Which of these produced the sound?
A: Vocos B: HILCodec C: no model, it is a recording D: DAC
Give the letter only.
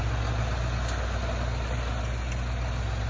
C